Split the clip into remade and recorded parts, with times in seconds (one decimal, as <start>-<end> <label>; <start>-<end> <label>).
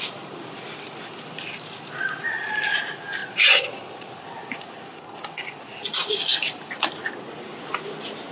0.0-3.2 recorded; 3.2-4.1 remade; 4.1-8.3 recorded